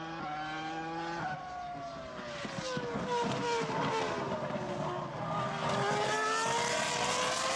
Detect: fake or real real